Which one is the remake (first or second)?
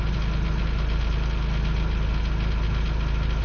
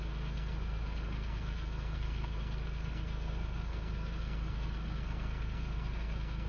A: second